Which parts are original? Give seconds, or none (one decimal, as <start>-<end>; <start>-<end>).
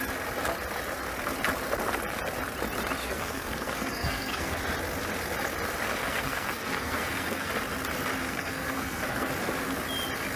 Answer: 0.0-3.0; 4.6-6.0; 7.5-8.2; 9.3-10.4